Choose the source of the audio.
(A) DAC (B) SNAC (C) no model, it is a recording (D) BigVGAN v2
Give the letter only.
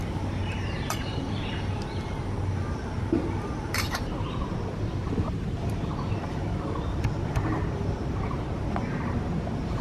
D